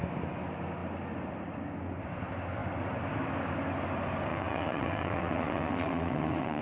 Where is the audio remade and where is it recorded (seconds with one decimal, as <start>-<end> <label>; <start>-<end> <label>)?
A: 0.0-4.3 recorded; 4.3-6.6 remade